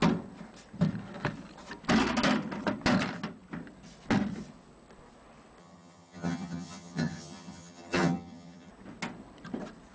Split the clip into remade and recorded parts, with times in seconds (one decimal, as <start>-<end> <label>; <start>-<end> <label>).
0.0-5.6 recorded; 5.6-8.7 remade; 8.7-9.9 recorded

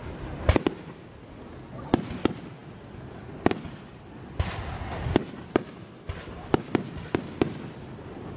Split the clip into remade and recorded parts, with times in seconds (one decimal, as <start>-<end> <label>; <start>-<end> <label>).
0.0-8.4 recorded